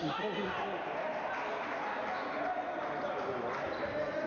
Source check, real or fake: real